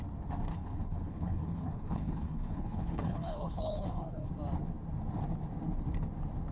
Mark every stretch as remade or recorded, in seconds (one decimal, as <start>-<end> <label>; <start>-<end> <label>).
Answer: 0.0-0.5 recorded; 0.5-4.3 remade; 4.3-6.5 recorded